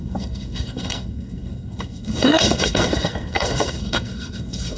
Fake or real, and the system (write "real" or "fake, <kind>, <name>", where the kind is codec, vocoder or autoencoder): fake, codec, SNAC